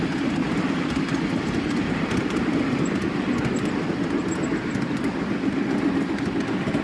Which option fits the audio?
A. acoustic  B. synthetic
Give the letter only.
A